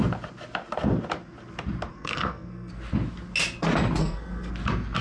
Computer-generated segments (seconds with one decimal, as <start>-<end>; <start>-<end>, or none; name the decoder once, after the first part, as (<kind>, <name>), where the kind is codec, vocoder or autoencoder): 1.9-2.7 (codec, SNAC); 4.0-4.5